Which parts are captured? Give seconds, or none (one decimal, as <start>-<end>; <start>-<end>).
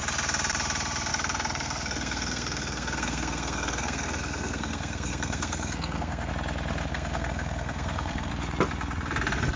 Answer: 0.0-1.1; 6.3-6.9; 8.3-9.6